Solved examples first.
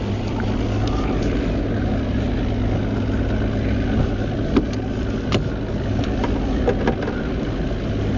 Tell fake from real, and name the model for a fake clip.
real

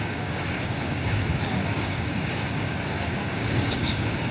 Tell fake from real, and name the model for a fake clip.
fake, codec, DAC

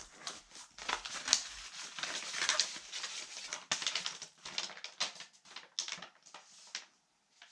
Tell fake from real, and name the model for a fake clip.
real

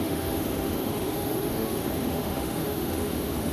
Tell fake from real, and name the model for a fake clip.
fake, autoencoder, DAC-VAE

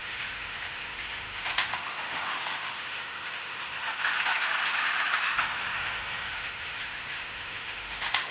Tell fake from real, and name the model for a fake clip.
fake, autoencoder, DAC-VAE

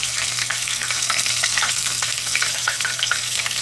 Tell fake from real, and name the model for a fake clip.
fake, codec, SNAC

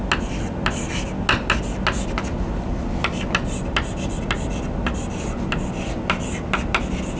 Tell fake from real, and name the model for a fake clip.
real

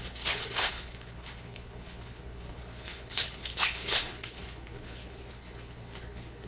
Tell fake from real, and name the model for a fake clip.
fake, codec, HILCodec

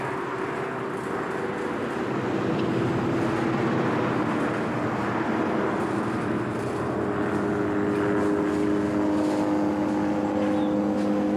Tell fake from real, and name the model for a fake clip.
real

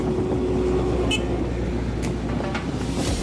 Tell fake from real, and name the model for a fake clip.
real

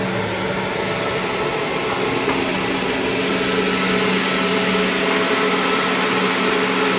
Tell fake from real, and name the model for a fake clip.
real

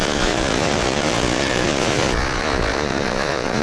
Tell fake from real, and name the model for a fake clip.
fake, vocoder, Vocos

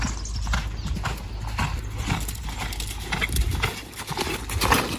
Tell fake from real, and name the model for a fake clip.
real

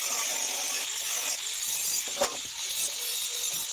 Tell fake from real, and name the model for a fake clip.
real